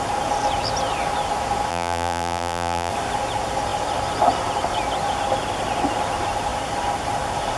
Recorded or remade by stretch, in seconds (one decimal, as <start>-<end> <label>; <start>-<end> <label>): 0.0-1.7 recorded; 1.7-2.9 remade; 2.9-7.6 recorded